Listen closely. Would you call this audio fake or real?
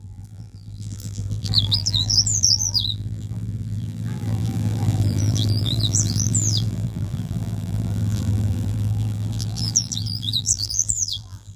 fake